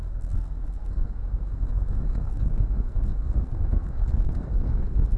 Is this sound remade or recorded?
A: remade